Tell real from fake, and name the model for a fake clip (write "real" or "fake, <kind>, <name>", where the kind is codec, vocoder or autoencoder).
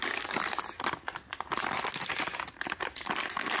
fake, vocoder, BigVGAN v2